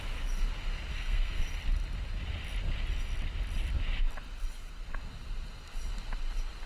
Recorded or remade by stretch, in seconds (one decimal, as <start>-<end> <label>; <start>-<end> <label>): 0.0-0.9 recorded; 0.9-1.4 remade; 1.4-6.7 recorded